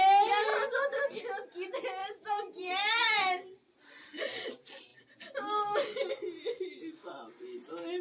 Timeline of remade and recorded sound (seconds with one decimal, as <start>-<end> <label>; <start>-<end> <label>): 0.0-2.0 recorded; 2.0-3.3 remade; 3.3-8.0 recorded